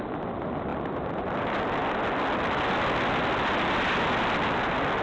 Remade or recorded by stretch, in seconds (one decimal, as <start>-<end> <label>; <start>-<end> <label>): 0.0-5.0 recorded

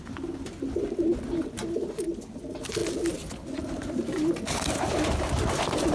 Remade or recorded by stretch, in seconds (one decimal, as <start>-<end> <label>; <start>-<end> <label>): 0.0-5.9 recorded